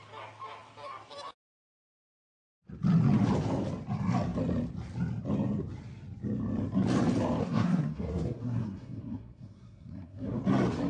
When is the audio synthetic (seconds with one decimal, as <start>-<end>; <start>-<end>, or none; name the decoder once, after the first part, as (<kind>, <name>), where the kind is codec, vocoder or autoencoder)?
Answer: 7.4-10.4 (codec, SNAC)